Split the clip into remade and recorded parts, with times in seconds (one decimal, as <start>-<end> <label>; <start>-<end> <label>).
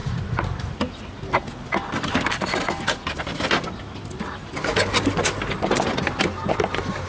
0.0-7.1 recorded